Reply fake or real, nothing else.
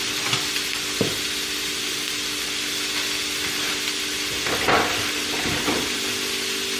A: real